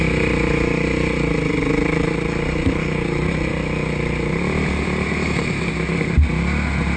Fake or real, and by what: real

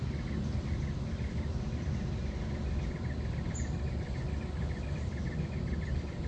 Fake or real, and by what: real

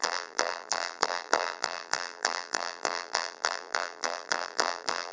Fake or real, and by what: fake, vocoder, BigVGAN v2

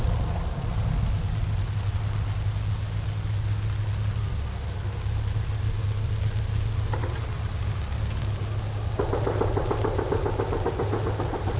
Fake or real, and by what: real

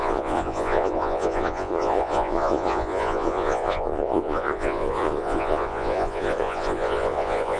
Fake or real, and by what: fake, vocoder, Vocos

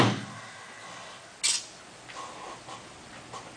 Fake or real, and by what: real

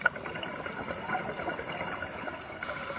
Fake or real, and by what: real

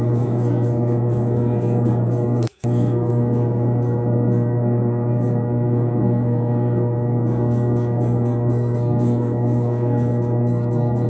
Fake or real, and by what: fake, codec, SNAC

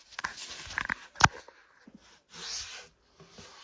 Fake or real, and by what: real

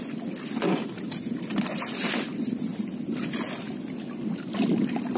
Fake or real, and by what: real